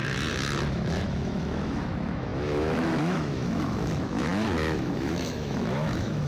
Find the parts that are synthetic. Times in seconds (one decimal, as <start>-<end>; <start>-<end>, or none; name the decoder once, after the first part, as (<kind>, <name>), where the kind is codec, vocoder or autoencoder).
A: 0.7-6.3 (autoencoder, DAC-VAE)

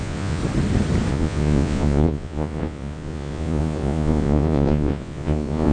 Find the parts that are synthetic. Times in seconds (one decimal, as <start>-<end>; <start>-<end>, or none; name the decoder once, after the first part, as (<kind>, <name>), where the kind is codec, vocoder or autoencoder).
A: 0.0-0.4 (vocoder, Vocos); 1.1-5.7

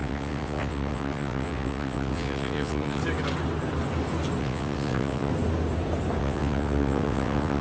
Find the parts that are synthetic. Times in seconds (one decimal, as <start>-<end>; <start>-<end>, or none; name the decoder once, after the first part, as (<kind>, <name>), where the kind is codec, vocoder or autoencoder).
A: 0.0-3.0 (vocoder, WaveNeXt); 4.4-5.3; 6.2-7.6

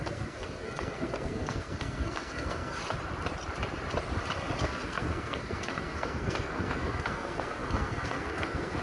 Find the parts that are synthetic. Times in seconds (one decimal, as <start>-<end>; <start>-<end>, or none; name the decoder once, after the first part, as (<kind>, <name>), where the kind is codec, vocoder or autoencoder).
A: 0.0-2.8 (codec, SNAC); 4.6-8.8

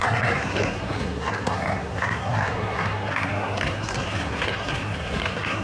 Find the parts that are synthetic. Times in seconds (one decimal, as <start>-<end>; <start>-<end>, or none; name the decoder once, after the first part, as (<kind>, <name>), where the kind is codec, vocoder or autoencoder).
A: 0.0-5.6 (codec, SNAC)

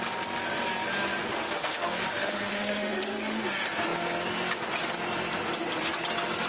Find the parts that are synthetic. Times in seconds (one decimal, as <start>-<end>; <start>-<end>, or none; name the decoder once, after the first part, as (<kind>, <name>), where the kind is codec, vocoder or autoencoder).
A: 1.3-3.4 (autoencoder, DAC-VAE)